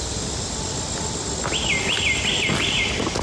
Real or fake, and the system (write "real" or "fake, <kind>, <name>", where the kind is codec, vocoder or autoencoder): real